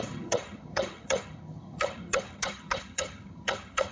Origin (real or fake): fake